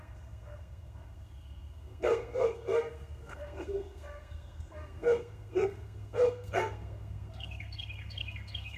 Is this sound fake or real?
fake